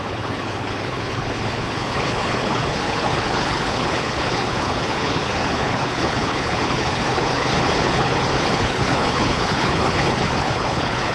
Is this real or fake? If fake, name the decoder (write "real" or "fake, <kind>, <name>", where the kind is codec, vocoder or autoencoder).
fake, codec, HILCodec